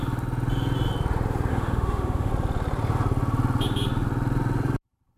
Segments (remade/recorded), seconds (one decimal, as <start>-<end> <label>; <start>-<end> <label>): 0.0-1.5 recorded; 1.5-2.3 remade; 2.3-5.2 recorded